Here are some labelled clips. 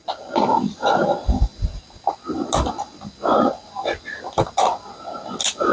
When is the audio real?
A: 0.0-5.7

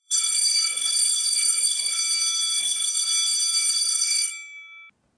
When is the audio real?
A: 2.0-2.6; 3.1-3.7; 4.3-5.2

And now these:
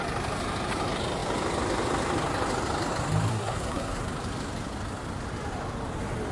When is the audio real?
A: 0.0-3.3; 4.0-6.3

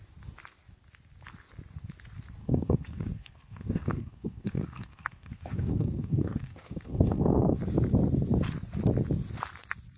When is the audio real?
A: 0.0-2.4; 7.6-10.0

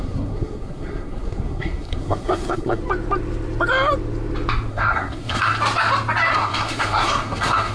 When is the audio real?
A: 2.8-4.7; 5.5-6.3

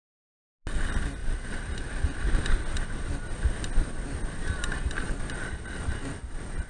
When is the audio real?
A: 0.0-6.7